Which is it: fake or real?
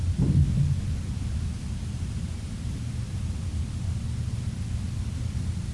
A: real